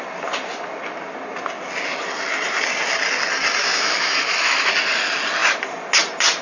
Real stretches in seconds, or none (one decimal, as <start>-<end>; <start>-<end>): 0.0-3.6; 4.7-6.4